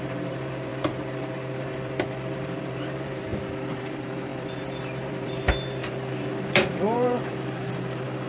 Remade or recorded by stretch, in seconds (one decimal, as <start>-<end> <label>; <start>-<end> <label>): 0.0-3.3 remade; 3.3-3.8 recorded; 3.8-8.3 remade